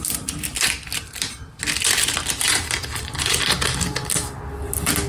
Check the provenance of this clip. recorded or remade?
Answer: recorded